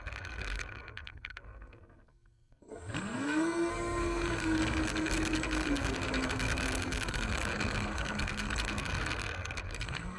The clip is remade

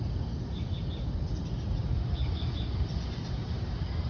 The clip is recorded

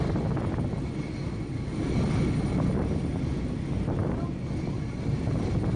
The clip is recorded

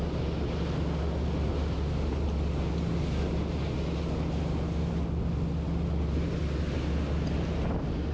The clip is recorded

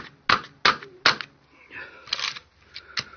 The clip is recorded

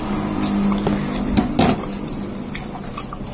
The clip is recorded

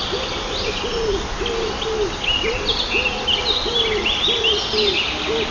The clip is recorded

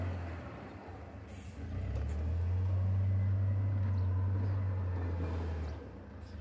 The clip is recorded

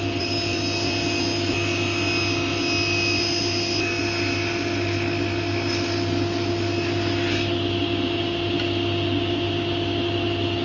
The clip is recorded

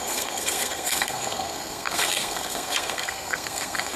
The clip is remade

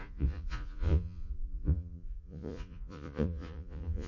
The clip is remade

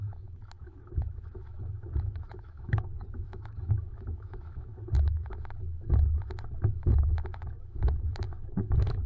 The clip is remade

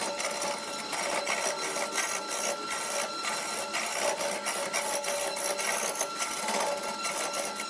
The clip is recorded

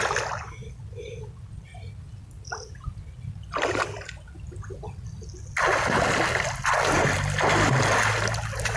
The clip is recorded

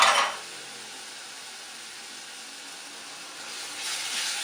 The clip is recorded